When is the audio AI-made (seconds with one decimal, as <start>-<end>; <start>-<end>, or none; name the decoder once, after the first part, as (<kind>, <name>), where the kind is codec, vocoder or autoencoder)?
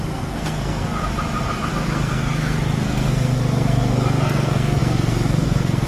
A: 0.0-1.0 (codec, SNAC); 1.7-5.9